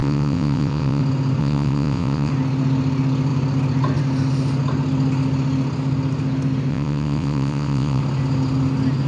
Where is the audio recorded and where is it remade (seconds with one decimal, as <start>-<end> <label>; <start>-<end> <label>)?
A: 0.0-1.0 remade; 1.0-1.4 recorded; 1.4-2.3 remade; 2.3-6.7 recorded; 6.7-8.0 remade; 8.0-9.1 recorded